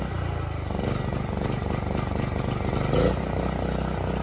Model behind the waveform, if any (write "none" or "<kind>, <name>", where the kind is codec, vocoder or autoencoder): none